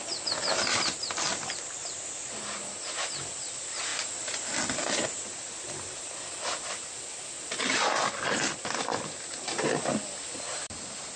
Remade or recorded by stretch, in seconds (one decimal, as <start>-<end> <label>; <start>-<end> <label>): 0.0-3.9 remade; 3.9-4.8 recorded; 4.8-11.2 remade